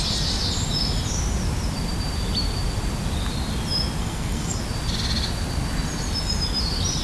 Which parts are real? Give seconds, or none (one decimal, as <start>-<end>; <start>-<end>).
0.0-4.0; 4.6-7.0

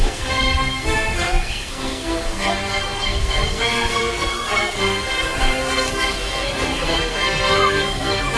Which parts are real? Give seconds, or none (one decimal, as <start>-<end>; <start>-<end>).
none

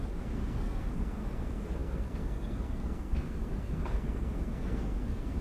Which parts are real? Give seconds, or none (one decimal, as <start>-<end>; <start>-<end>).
none

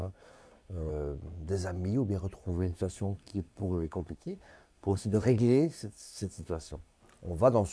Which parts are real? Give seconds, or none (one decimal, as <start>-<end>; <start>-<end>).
0.9-2.4; 7.0-7.7

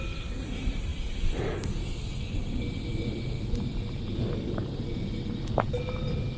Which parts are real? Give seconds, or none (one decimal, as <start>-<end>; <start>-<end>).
0.0-6.4

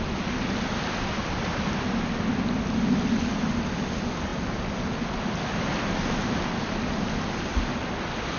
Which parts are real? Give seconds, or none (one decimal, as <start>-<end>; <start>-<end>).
0.0-8.4

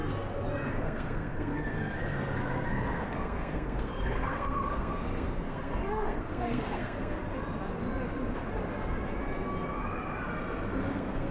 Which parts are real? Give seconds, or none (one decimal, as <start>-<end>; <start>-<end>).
0.0-0.7; 7.2-10.9

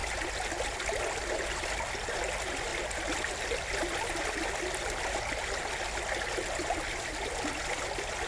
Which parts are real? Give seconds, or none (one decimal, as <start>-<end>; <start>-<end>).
0.0-8.3